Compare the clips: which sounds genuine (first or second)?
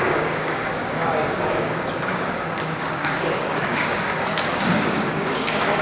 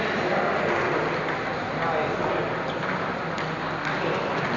second